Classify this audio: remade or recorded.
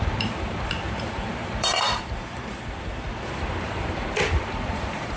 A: remade